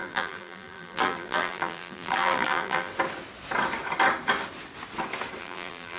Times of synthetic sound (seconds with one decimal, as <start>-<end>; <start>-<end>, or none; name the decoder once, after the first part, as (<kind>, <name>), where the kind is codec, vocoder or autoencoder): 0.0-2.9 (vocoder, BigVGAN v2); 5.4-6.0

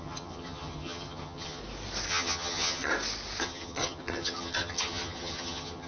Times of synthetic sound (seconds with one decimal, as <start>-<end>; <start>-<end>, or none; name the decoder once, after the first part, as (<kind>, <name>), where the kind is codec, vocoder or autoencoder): 0.0-1.6 (vocoder, HiFi-GAN); 2.1-2.9; 3.4-5.9

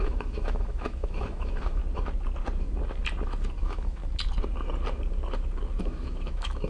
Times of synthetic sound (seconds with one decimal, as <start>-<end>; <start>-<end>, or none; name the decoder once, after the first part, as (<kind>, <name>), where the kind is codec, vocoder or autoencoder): 0.0-1.8 (autoencoder, DAC-VAE); 3.6-4.0; 5.8-6.7

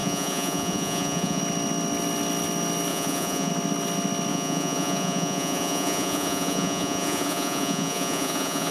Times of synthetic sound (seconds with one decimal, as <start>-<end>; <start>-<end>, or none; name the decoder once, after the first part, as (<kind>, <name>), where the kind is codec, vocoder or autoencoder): 0.0-1.4 (vocoder, Vocos); 2.9-3.5; 4.3-8.7

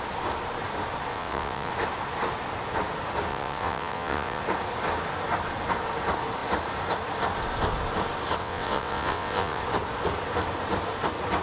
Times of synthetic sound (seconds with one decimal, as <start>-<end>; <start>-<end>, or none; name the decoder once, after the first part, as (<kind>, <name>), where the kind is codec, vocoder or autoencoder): 1.1-1.7 (vocoder, WaveNeXt); 3.3-4.4; 8.4-9.6

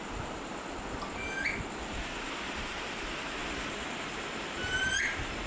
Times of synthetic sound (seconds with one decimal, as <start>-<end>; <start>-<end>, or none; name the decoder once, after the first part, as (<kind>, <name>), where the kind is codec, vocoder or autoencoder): none